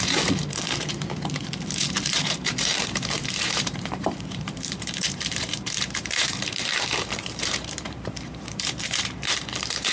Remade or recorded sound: remade